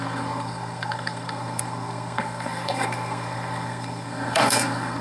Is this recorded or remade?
remade